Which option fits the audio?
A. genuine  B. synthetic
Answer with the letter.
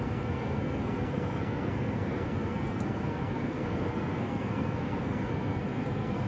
B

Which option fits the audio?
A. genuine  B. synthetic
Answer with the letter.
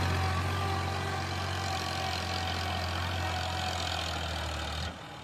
A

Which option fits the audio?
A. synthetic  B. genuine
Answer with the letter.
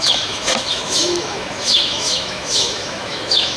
A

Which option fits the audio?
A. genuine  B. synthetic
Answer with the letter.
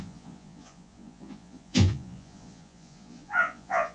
B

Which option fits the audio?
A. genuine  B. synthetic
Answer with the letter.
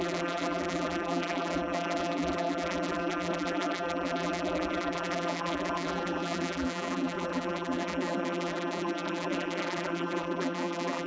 B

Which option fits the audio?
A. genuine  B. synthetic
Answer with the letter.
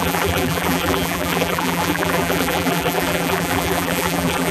B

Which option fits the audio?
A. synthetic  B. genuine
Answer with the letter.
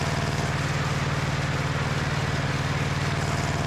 B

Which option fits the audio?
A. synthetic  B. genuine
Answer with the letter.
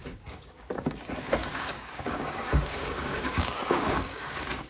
A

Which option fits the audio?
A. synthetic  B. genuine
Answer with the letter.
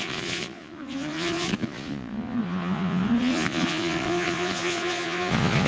A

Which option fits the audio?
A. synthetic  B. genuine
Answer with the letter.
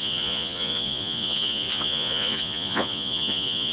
A